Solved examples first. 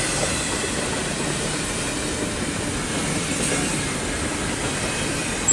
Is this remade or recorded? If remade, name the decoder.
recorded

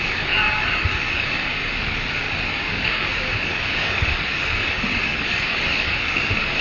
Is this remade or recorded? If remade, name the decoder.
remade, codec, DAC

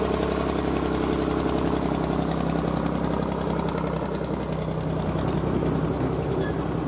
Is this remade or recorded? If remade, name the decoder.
recorded